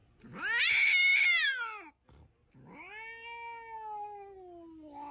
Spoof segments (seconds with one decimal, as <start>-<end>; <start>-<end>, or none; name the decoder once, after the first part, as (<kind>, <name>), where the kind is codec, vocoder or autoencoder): none